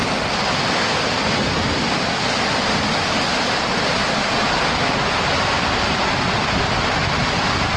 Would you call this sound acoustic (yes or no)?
yes